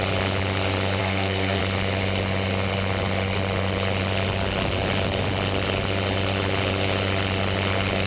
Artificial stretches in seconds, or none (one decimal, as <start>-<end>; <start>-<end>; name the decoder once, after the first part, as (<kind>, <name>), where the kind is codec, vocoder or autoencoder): 1.0-1.6 (codec, SNAC)